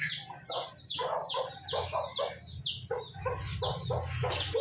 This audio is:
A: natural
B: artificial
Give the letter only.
A